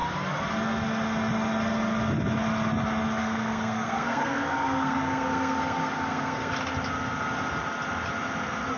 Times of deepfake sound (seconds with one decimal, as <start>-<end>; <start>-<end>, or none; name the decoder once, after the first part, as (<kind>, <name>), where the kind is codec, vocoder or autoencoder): 3.2-6.5 (codec, SNAC)